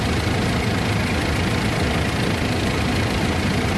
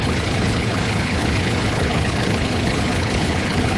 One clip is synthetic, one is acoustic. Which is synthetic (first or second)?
second